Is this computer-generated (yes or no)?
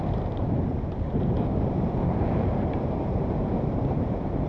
yes